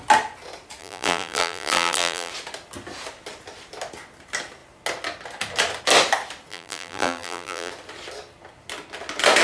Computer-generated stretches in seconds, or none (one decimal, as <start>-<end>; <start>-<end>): 0.8-2.3; 6.5-7.7